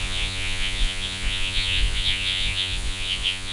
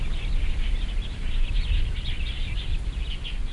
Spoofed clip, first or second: first